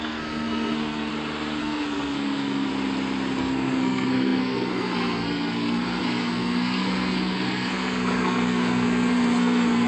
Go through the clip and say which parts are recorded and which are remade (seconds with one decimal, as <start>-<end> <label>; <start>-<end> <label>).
0.0-1.1 remade; 1.1-1.6 recorded; 1.6-2.7 remade; 2.7-3.4 recorded; 3.4-9.9 remade